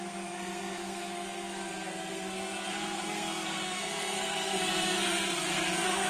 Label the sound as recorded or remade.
remade